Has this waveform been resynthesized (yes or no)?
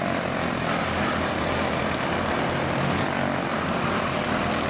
no